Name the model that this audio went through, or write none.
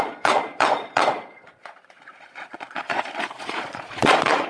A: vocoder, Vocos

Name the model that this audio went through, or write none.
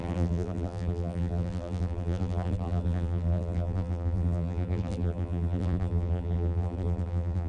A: vocoder, BigVGAN v2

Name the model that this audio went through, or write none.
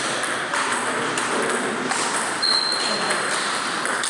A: vocoder, BigVGAN v2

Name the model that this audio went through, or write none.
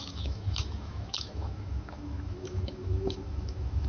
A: autoencoder, DAC-VAE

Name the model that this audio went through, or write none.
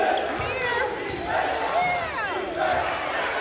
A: none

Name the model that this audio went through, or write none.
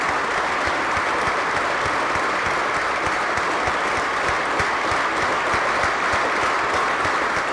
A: none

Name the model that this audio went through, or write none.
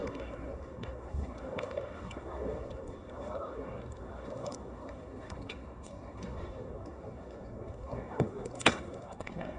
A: codec, SNAC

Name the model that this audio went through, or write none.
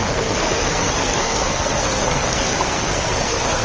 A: codec, SNAC